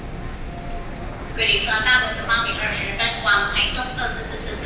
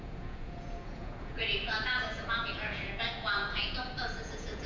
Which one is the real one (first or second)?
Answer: first